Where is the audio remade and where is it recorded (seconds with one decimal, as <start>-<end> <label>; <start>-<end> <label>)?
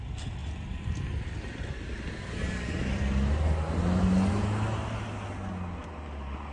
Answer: 0.0-6.5 recorded